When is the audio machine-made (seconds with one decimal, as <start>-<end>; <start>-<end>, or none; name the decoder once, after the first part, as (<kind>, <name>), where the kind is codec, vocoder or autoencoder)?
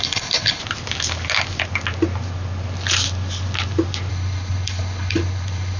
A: 0.0-0.6 (codec, HILCodec); 4.1-5.8